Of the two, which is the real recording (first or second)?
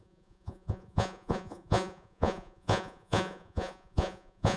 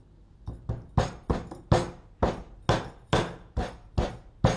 second